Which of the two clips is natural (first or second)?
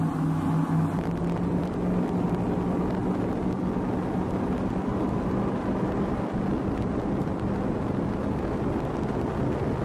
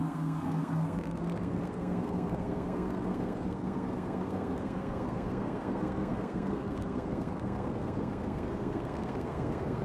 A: first